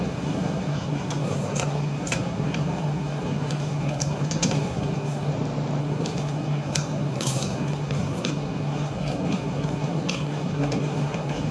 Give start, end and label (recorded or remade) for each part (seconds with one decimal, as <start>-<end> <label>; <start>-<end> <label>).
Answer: 0.0-5.3 remade; 5.3-5.8 recorded; 5.8-11.5 remade